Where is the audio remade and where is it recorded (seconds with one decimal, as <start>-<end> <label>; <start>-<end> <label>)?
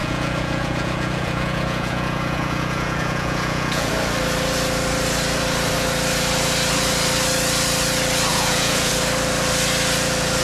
0.0-3.9 remade; 3.9-8.3 recorded; 8.3-8.9 remade; 8.9-10.4 recorded